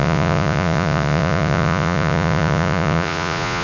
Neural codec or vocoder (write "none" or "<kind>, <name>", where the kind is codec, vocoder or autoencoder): vocoder, Vocos